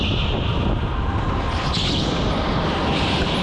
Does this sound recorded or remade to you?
recorded